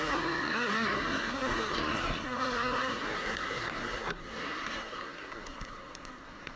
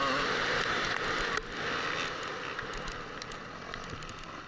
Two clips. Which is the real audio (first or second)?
second